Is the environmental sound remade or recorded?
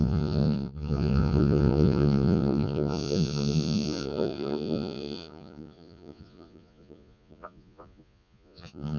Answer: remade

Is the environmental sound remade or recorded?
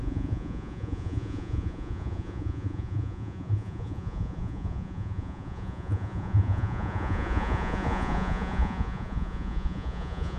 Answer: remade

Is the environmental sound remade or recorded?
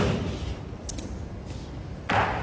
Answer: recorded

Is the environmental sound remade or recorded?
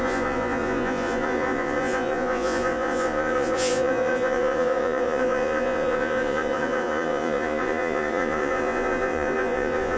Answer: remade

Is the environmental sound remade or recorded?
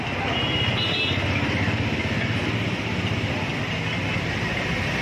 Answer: recorded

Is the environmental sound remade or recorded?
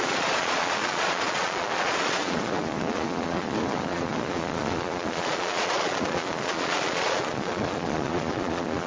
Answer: remade